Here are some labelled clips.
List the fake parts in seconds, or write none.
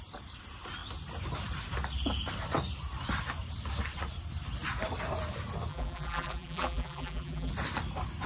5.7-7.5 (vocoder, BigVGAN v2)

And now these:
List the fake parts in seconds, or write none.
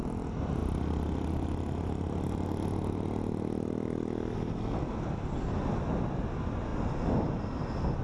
none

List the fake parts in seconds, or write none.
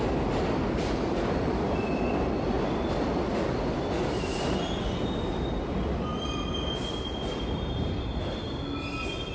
none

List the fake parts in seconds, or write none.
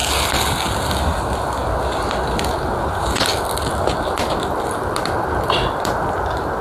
0.9-1.6 (vocoder, BigVGAN v2); 2.5-6.6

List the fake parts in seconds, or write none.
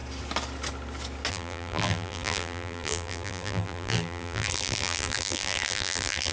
1.3-6.3 (vocoder, BigVGAN v2)